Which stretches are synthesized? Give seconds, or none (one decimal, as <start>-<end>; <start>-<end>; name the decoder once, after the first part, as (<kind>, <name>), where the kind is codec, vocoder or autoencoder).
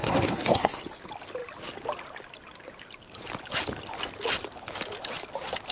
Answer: 0.0-0.8 (codec, SNAC)